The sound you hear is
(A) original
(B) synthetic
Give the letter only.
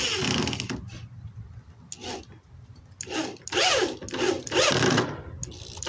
A